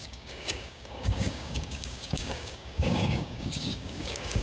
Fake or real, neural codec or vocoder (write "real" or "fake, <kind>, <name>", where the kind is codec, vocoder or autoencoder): fake, codec, DAC